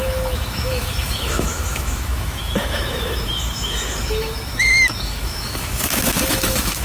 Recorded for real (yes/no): no